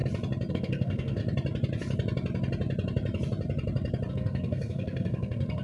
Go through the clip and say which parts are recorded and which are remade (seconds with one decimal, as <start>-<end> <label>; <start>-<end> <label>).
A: 0.0-0.5 recorded; 0.5-1.2 remade; 1.2-4.1 recorded; 4.1-5.6 remade